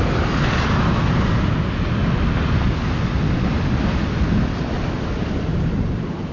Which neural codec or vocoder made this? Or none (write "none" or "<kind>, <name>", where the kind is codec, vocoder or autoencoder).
none